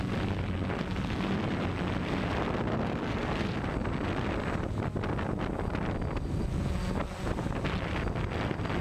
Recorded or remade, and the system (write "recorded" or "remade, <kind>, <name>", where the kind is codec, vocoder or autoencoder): recorded